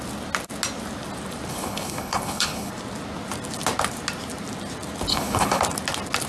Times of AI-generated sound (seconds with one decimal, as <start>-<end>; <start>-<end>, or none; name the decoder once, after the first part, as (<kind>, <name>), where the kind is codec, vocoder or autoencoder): 1.5-2.7 (codec, HILCodec); 5.1-5.6

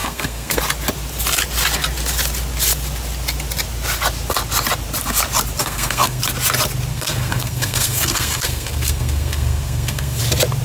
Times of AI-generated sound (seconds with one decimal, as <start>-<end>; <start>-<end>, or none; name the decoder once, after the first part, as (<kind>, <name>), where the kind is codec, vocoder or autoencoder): 0.0-0.6 (codec, SNAC); 5.6-6.2; 6.9-10.2

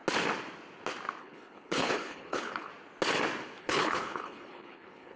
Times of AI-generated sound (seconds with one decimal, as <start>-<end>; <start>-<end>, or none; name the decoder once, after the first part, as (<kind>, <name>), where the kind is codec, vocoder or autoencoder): 1.2-2.7 (codec, HILCodec); 3.6-5.2

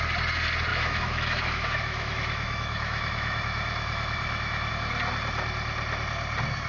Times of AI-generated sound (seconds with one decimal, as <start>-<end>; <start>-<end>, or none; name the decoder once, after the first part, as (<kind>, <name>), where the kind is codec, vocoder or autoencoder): 0.7-4.7 (autoencoder, DAC-VAE)

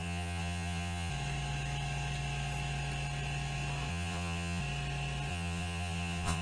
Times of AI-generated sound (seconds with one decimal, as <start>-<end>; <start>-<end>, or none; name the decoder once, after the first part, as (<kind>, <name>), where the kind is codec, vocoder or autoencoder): 0.0-1.1 (vocoder, Vocos); 3.9-4.6; 5.3-6.4

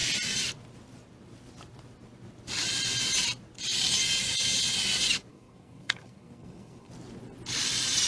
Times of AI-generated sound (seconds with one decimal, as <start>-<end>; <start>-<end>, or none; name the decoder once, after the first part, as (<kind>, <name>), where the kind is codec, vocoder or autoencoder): 5.3-6.9 (codec, SNAC)

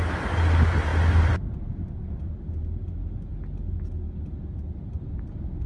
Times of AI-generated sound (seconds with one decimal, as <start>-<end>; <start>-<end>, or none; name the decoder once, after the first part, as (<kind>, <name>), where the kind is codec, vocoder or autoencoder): none

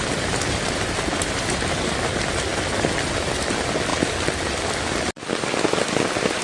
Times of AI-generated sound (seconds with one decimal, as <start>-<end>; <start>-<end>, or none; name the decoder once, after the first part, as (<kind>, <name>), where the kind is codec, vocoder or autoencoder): none